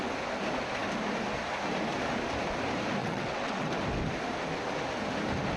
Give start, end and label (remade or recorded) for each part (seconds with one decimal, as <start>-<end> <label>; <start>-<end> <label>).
0.0-3.0 recorded; 3.0-3.7 remade; 3.7-5.6 recorded